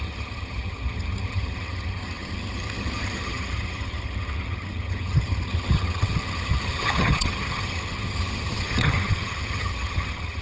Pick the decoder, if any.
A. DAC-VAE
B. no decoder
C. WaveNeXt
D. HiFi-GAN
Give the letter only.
D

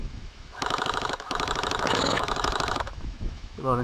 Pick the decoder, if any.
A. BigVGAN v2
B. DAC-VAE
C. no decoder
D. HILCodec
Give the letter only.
B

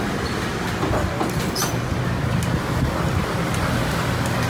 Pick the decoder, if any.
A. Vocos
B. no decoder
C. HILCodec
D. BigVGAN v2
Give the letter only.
B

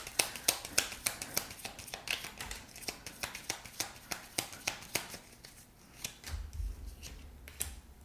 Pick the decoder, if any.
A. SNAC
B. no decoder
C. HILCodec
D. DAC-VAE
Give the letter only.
B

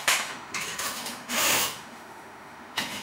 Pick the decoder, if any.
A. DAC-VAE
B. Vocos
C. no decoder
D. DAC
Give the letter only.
A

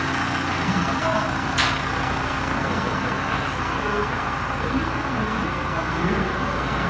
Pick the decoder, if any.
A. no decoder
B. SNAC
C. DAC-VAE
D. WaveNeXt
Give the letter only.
B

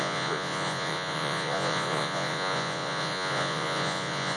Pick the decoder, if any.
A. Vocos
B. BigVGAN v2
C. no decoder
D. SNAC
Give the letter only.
A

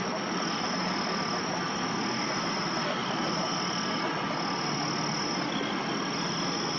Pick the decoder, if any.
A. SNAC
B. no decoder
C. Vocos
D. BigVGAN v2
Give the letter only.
B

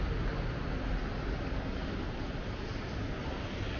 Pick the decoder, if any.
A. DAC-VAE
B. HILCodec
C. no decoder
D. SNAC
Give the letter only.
C